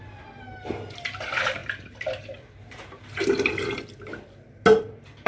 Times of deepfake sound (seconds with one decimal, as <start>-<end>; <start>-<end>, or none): 0.0-1.6; 4.8-5.3